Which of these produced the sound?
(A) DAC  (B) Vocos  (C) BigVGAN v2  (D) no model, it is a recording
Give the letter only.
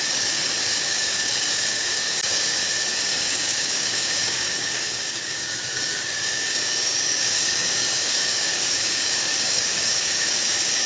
A